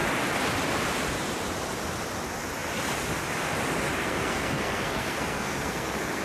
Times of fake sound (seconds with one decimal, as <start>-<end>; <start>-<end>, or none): 4.0-6.2